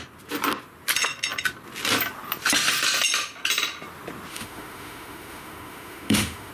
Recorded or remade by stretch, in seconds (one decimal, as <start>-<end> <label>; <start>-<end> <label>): 0.0-4.3 recorded; 4.3-6.5 remade